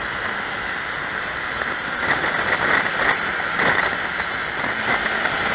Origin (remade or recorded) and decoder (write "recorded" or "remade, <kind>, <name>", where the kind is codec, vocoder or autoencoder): recorded